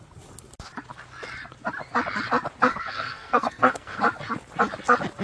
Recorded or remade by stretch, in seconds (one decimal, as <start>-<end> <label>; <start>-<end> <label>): 0.0-2.7 recorded; 2.7-4.0 remade; 4.0-5.2 recorded